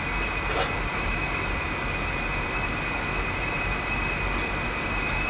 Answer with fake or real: real